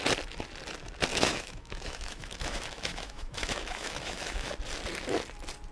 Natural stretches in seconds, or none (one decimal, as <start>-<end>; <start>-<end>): 0.0-1.1; 4.5-5.7